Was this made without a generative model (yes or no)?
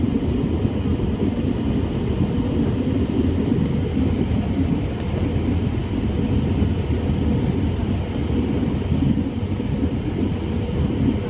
yes